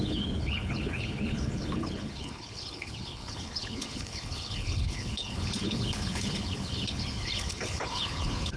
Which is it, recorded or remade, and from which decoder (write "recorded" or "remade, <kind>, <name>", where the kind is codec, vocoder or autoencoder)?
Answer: remade, codec, HILCodec